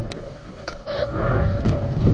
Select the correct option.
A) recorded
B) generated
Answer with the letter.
B